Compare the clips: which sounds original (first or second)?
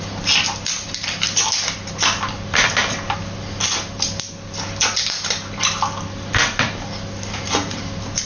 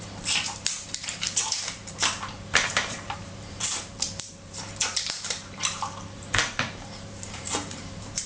first